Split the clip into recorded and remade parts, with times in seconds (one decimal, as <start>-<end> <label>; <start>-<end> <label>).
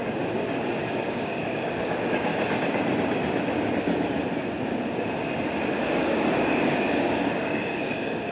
0.0-2.3 remade; 2.3-5.8 recorded; 5.8-8.3 remade